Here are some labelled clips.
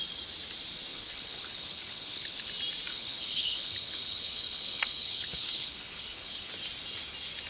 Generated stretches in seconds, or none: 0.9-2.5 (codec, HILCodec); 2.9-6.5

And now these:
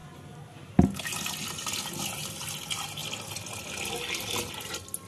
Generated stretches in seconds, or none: none

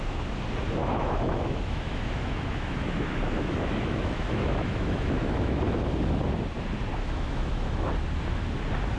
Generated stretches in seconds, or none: 0.8-5.6 (autoencoder, DAC-VAE); 6.9-7.9